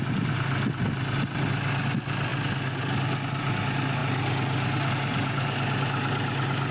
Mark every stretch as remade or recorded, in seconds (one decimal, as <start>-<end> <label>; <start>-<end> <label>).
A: 0.0-6.7 recorded